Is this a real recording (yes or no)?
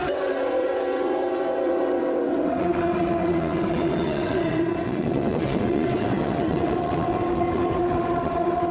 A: no